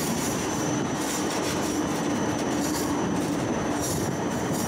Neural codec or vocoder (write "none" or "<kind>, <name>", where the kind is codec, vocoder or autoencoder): vocoder, BigVGAN v2